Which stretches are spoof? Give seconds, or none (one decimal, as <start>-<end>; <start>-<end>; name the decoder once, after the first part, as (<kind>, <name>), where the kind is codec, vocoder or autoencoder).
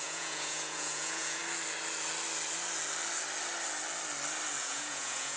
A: 0.0-1.4 (vocoder, Vocos); 4.6-5.4